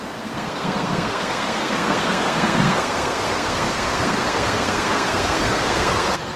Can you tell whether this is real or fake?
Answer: fake